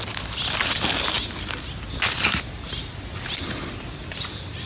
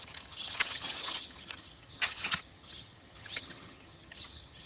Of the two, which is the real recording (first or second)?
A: first